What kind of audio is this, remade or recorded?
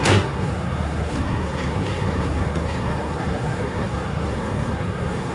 remade